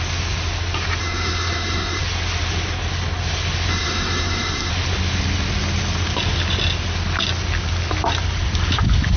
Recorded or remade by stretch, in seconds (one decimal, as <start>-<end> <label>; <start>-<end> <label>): 0.0-1.0 recorded; 1.0-2.0 remade; 2.0-3.7 recorded; 3.7-4.7 remade; 4.7-9.2 recorded